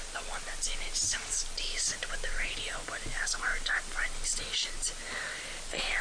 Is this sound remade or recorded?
recorded